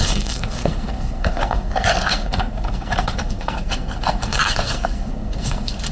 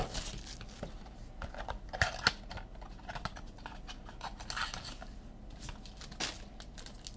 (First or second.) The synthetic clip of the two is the first